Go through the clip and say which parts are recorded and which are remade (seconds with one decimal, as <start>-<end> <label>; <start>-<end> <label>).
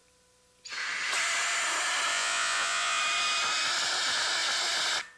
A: 0.0-2.1 recorded; 2.1-3.0 remade; 3.0-5.2 recorded